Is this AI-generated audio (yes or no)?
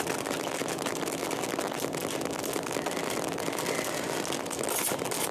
no